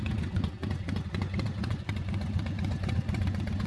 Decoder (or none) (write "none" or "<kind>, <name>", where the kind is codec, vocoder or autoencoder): vocoder, Vocos